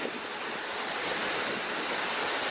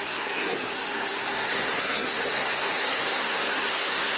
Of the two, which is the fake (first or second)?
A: second